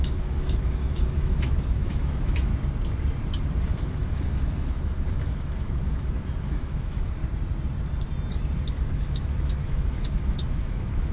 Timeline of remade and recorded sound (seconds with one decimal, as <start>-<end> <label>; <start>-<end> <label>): 0.0-2.5 remade; 2.5-3.6 recorded; 3.6-7.2 remade; 7.2-8.7 recorded; 8.7-11.1 remade